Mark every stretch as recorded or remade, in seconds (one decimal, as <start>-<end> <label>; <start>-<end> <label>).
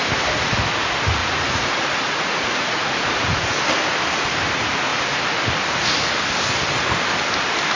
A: 0.0-1.2 recorded; 1.2-3.6 remade; 3.6-7.8 recorded